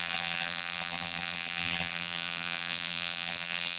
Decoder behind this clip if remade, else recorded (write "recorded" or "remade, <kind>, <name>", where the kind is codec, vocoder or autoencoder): remade, vocoder, BigVGAN v2